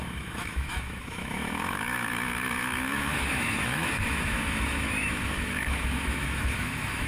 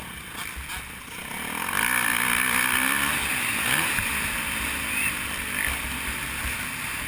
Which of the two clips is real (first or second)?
second